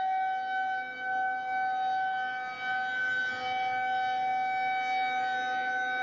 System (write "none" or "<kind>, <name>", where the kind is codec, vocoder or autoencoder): none